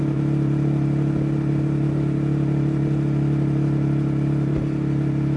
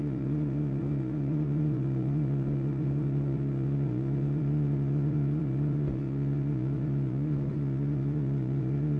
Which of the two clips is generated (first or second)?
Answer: second